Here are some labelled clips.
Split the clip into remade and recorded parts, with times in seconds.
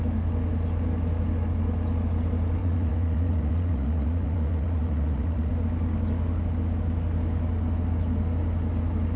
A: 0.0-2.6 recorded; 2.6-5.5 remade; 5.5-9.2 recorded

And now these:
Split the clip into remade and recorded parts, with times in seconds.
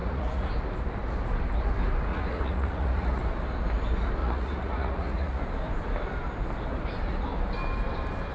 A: 0.0-0.5 remade; 0.5-2.1 recorded; 2.1-3.2 remade; 3.2-4.2 recorded; 4.2-5.4 remade; 5.4-8.3 recorded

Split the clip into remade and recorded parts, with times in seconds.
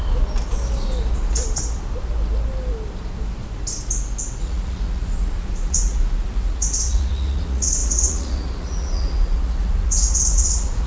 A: 0.0-4.4 recorded; 4.4-10.9 remade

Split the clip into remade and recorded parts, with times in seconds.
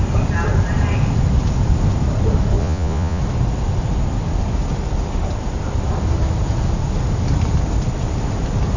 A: 0.0-2.6 recorded; 2.6-3.2 remade; 3.2-8.8 recorded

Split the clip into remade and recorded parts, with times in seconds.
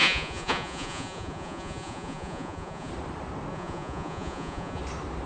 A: 0.0-2.9 remade; 2.9-3.5 recorded; 3.5-4.8 remade; 4.8-5.3 recorded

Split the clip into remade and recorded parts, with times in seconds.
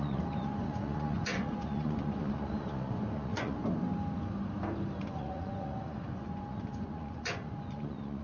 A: 0.0-3.6 remade; 3.6-5.0 recorded; 5.0-8.2 remade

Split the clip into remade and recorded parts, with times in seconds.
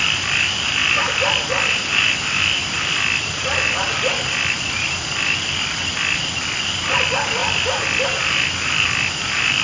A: 0.0-9.6 recorded